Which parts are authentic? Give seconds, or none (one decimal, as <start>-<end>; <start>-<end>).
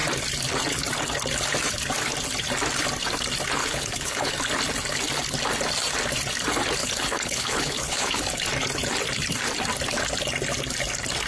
0.0-3.6; 4.3-6.8; 8.2-11.3